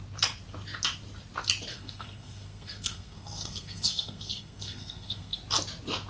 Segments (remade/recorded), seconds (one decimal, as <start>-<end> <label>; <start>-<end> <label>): 0.0-1.7 recorded; 1.7-5.4 remade; 5.4-6.1 recorded